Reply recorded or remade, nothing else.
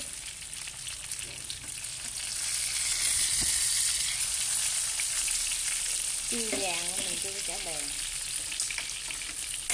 recorded